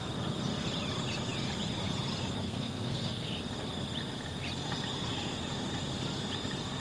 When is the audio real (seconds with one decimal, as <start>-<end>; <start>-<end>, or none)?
0.0-2.4; 3.3-6.8